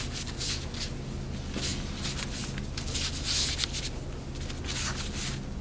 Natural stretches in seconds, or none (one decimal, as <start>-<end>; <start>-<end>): 0.0-5.6